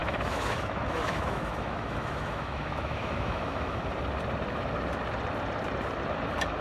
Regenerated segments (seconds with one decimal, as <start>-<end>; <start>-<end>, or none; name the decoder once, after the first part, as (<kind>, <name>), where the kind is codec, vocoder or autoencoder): 0.0-3.8 (autoencoder, DAC-VAE)

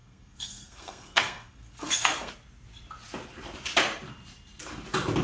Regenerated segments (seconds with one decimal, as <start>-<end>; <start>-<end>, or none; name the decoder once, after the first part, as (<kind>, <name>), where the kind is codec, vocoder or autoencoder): 0.0-2.3 (codec, SNAC)

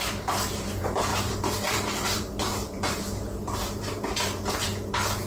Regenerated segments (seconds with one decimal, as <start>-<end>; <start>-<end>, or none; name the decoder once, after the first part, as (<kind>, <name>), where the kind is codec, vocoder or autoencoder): 0.0-4.7 (vocoder, BigVGAN v2)

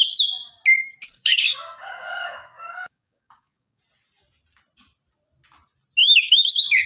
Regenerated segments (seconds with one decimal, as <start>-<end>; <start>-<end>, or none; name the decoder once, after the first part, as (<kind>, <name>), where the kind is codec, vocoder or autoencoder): 0.8-3.8 (codec, DAC); 6.0-6.9

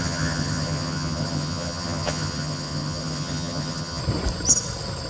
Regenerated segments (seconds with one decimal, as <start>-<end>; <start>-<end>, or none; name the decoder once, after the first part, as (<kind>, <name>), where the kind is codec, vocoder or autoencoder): 0.0-4.0 (vocoder, HiFi-GAN)

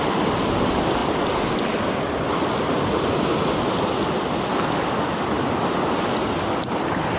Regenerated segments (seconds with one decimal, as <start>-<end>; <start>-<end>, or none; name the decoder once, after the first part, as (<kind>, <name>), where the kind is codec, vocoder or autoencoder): none